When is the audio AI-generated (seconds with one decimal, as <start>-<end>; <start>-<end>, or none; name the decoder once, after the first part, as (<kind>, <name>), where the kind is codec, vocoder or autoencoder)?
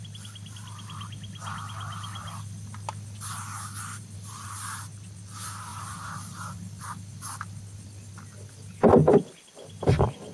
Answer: none